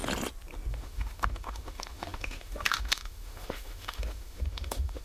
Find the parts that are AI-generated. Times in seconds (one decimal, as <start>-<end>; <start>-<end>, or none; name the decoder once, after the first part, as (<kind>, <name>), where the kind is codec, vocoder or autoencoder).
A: 0.7-5.0 (autoencoder, DAC-VAE)